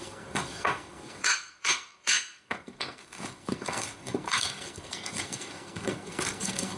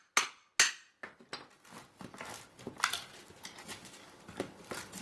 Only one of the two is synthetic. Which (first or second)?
first